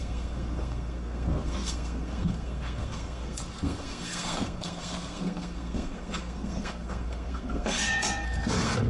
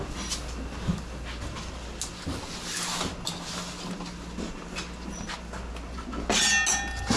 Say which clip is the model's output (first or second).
first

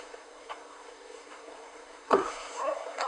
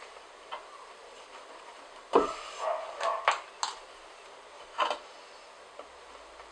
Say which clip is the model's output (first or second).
first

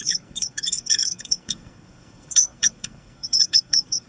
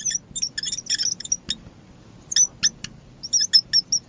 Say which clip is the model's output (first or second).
first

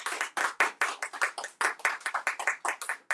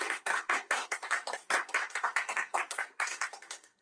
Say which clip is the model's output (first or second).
second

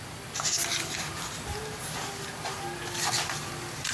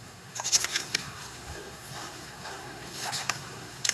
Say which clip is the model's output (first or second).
second